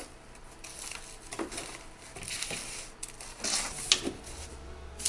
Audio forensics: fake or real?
real